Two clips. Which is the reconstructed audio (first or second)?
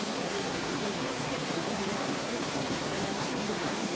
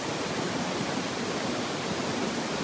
first